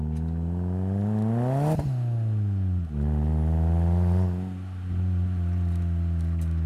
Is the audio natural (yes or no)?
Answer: yes